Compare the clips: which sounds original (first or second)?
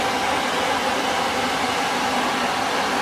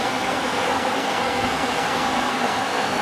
first